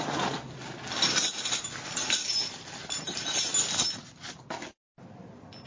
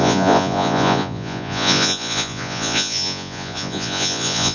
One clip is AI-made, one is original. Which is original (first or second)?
first